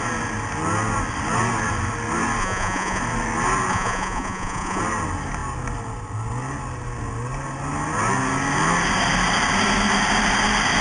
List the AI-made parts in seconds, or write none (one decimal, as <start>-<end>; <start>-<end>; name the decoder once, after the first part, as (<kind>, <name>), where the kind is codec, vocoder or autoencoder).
2.4-3.0 (vocoder, Vocos); 3.7-4.8

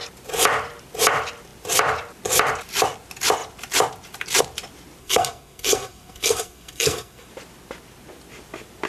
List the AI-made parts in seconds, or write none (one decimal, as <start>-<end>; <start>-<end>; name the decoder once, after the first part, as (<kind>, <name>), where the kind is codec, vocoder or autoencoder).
5.0-7.3 (codec, SNAC)

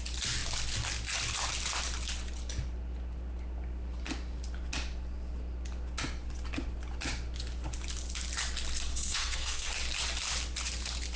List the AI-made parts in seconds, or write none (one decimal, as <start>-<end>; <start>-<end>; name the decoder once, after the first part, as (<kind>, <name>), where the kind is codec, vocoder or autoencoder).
8.9-9.7 (codec, SNAC)

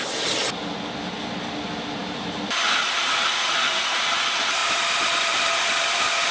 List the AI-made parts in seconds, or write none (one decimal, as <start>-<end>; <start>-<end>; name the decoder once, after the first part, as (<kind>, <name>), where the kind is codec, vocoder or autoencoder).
4.6-6.3 (vocoder, BigVGAN v2)

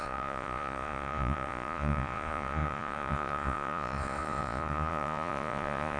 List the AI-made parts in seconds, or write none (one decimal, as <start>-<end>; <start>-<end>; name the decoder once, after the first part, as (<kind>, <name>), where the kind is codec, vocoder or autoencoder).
0.0-6.0 (vocoder, Vocos)